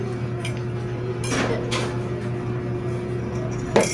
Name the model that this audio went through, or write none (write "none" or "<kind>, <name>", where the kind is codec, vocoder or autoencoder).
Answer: none